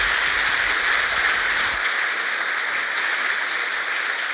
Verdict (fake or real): real